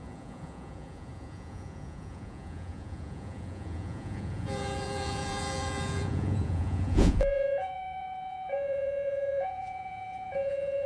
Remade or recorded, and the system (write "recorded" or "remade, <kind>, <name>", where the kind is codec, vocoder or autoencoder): remade, vocoder, Vocos